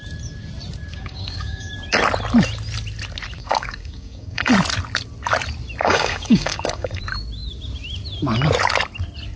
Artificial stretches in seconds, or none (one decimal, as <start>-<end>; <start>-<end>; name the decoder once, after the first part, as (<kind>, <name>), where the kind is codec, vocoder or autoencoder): 0.9-1.7 (codec, DAC); 3.4-4.5; 5.8-7.0

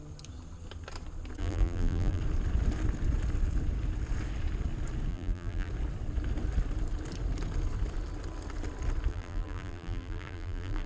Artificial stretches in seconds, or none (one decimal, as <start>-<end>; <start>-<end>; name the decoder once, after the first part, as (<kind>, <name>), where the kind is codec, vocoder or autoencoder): 1.4-2.2 (vocoder, BigVGAN v2); 5.1-5.7; 9.1-10.9